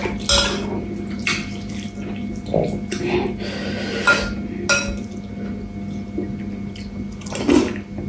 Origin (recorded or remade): recorded